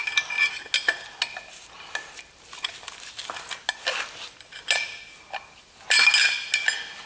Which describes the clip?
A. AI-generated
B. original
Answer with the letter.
B